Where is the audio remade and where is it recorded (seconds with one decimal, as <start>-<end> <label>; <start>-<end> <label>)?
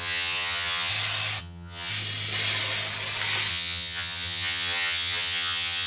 0.0-0.9 remade; 0.9-1.4 recorded; 1.4-1.9 remade; 1.9-3.5 recorded; 3.5-5.9 remade